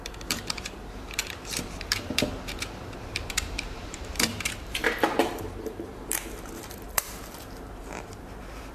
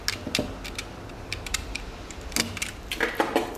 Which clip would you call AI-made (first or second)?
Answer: first